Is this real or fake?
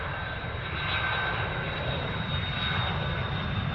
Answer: real